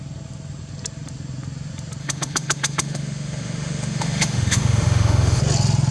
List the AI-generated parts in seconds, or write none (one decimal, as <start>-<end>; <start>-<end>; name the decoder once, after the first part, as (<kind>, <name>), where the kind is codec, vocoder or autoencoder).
2.0-5.4 (autoencoder, DAC-VAE)